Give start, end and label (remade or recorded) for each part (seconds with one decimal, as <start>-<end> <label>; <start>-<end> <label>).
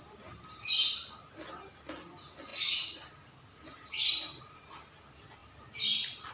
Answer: 0.0-6.3 recorded